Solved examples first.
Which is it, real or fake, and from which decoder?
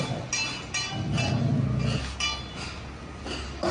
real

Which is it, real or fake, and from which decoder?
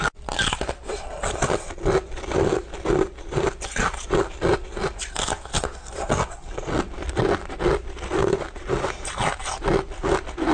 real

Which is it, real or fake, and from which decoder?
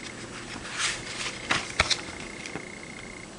real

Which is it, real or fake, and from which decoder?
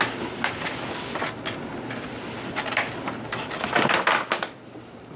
real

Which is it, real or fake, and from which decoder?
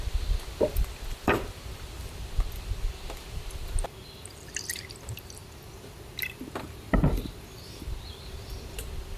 real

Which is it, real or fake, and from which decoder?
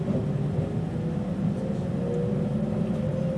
real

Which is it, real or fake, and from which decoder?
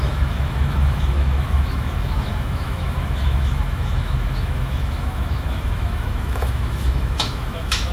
fake, autoencoder, DAC-VAE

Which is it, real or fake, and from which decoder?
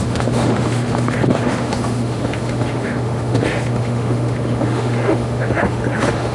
fake, autoencoder, DAC-VAE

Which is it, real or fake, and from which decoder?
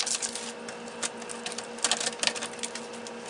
real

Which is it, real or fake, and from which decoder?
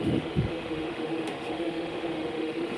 fake, autoencoder, DAC-VAE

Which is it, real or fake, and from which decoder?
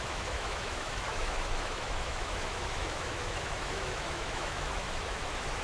fake, autoencoder, DAC-VAE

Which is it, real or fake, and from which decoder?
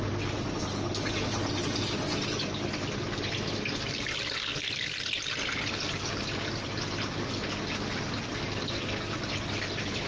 real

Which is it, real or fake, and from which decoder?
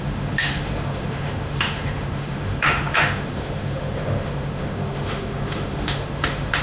fake, autoencoder, DAC-VAE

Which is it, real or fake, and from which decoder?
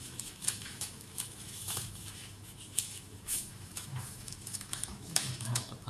fake, autoencoder, DAC-VAE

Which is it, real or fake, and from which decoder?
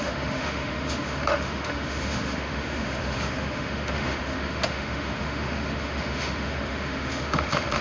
fake, autoencoder, DAC-VAE